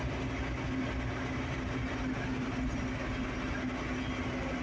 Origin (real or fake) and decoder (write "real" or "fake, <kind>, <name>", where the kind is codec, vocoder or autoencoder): real